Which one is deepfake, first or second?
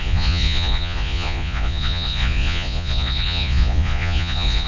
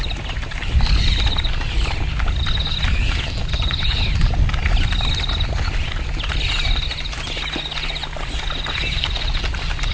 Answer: first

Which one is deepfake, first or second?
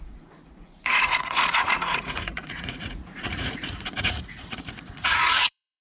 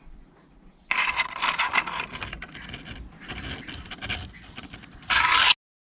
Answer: first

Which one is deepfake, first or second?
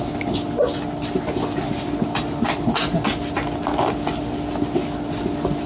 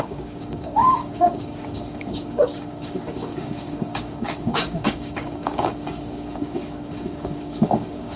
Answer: second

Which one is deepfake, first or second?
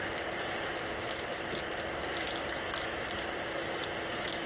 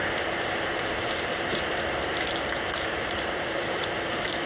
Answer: second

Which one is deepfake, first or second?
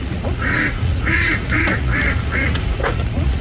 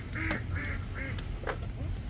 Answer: first